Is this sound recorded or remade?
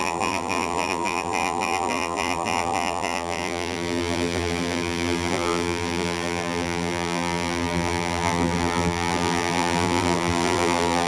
remade